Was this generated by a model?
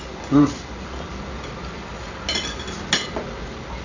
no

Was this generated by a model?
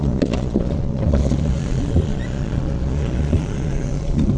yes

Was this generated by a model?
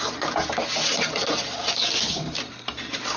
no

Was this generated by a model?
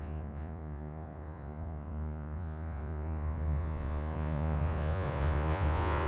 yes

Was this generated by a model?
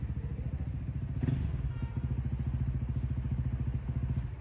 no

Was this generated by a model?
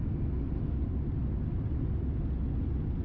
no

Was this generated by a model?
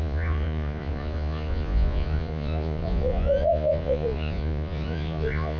yes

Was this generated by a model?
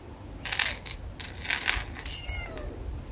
no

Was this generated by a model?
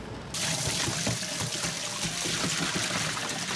no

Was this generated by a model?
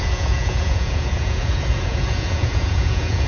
yes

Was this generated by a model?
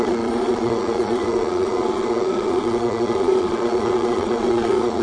yes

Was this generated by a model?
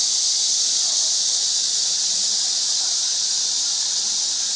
yes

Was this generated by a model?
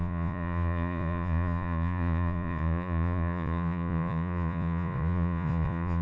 yes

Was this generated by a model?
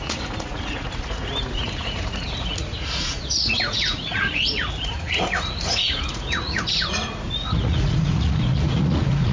yes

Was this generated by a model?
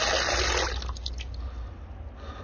no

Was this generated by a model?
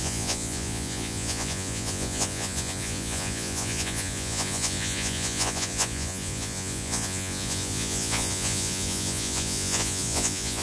yes